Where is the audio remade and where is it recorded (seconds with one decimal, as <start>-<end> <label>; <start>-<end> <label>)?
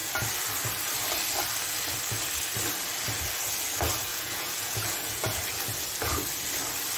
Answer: 0.0-4.1 recorded; 4.1-5.4 remade; 5.4-7.0 recorded